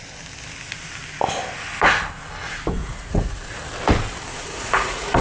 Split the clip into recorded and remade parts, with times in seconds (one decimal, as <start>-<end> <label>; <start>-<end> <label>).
0.0-2.8 recorded; 2.8-3.5 remade; 3.5-4.3 recorded; 4.3-5.2 remade

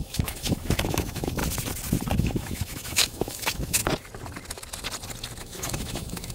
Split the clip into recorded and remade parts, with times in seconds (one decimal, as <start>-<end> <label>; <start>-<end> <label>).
0.0-1.4 remade; 1.4-2.2 recorded; 2.2-3.8 remade; 3.8-5.4 recorded; 5.4-6.3 remade

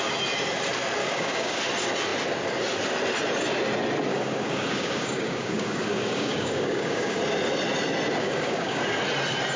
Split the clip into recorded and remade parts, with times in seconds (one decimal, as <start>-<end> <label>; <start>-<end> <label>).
0.0-1.0 recorded; 1.0-1.6 remade; 1.6-4.1 recorded; 4.1-7.2 remade; 7.2-8.2 recorded; 8.2-8.8 remade; 8.8-9.6 recorded

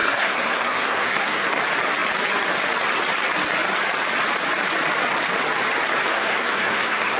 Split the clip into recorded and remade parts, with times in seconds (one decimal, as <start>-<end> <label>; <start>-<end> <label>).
0.0-1.6 remade; 1.6-6.1 recorded; 6.1-7.2 remade